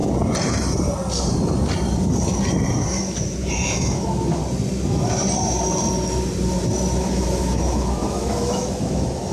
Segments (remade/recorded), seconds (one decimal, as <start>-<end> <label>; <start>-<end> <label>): 0.0-3.5 recorded; 3.5-4.4 remade; 4.4-7.0 recorded; 7.0-9.3 remade